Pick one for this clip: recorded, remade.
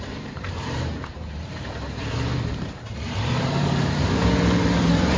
remade